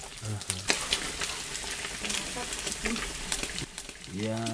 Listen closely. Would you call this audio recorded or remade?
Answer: recorded